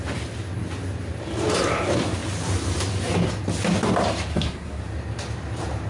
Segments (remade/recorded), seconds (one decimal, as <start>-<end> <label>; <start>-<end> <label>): 0.0-4.3 recorded; 4.3-4.8 remade; 4.8-5.9 recorded